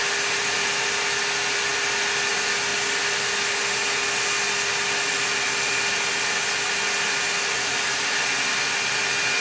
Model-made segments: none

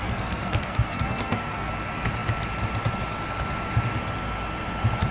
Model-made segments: 0.0-1.7

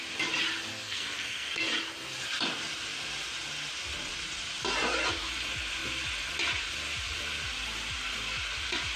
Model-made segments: 0.7-1.6